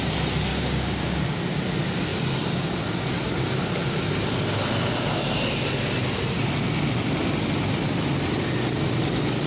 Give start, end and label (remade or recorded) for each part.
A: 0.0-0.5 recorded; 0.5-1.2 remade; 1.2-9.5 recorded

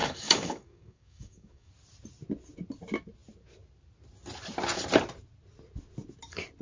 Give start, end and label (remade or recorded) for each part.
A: 0.0-1.7 remade; 1.7-6.6 recorded

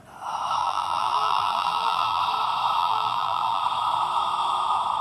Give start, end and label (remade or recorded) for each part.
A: 0.0-0.6 recorded; 0.6-2.2 remade; 2.2-2.8 recorded; 2.8-3.6 remade; 3.6-5.0 recorded